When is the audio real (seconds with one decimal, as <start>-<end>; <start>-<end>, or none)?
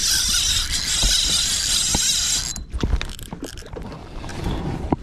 0.0-1.4; 1.9-3.5